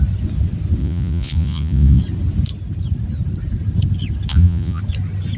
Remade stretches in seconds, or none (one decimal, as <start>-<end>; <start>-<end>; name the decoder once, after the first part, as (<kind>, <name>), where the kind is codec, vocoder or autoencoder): 0.8-2.0 (vocoder, Vocos); 4.3-4.8